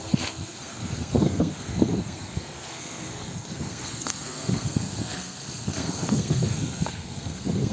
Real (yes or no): no